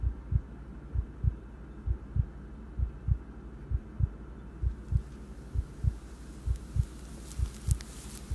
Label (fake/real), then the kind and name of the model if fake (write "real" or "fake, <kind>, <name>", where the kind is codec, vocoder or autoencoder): real